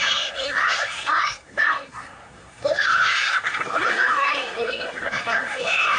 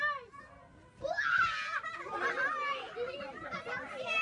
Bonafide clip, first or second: second